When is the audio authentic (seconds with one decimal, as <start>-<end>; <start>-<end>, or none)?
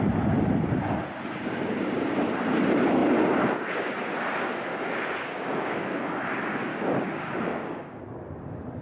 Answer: 0.0-4.7; 6.1-6.7; 8.0-8.8